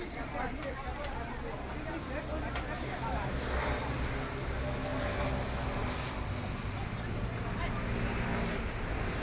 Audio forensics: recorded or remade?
recorded